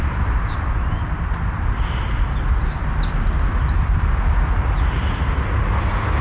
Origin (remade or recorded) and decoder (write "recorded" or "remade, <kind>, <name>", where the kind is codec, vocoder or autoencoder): recorded